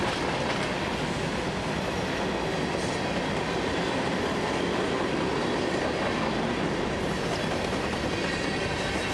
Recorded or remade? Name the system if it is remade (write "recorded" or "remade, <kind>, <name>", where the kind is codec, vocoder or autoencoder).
recorded